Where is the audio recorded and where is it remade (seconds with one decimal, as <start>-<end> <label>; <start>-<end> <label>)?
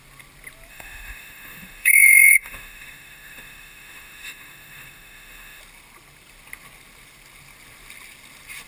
0.0-0.7 recorded; 0.7-5.6 remade; 5.6-8.7 recorded